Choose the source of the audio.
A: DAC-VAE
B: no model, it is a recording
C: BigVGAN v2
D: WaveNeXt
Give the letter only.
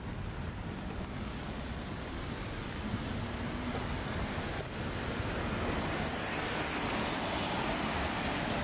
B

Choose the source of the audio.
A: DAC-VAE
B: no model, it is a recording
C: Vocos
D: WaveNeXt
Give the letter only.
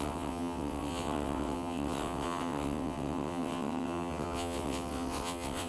D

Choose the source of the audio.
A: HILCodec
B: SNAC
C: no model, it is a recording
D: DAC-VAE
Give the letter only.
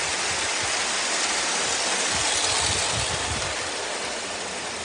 C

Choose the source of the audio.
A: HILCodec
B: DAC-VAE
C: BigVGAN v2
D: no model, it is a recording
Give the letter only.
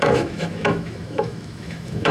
B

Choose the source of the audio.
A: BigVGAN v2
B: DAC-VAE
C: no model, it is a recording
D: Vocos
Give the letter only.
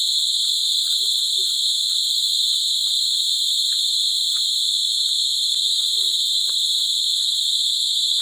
C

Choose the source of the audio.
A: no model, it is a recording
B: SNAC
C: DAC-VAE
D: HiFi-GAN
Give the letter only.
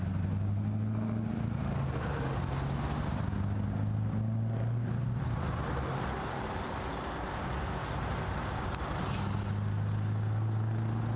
A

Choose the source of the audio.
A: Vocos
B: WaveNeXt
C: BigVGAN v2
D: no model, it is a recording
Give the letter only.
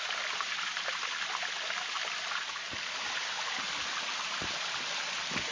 D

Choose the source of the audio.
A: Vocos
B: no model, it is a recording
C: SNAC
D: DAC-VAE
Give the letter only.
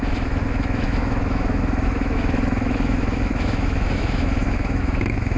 D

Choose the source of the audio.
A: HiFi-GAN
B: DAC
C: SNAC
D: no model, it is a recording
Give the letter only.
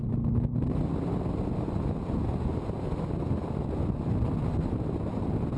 D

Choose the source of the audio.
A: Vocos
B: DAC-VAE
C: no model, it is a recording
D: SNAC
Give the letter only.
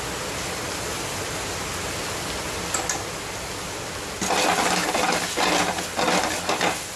C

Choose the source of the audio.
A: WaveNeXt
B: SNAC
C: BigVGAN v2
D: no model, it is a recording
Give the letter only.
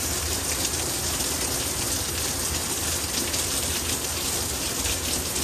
D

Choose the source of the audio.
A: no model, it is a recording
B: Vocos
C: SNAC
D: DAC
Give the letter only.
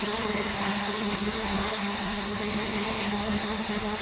C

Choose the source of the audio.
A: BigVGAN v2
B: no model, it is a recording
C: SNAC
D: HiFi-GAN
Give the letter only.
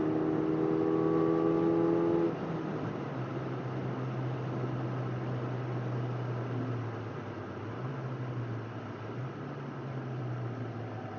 B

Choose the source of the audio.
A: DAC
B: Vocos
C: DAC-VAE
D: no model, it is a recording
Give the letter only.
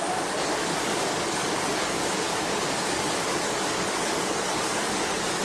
A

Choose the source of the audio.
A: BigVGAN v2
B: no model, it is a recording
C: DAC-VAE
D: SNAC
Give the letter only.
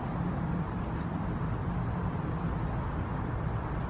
B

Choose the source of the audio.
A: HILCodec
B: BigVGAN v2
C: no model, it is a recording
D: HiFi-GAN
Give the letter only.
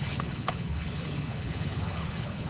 A